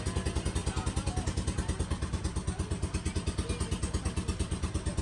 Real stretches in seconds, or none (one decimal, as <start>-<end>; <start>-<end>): 0.0-5.0